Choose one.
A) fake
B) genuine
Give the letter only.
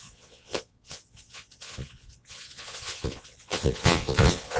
A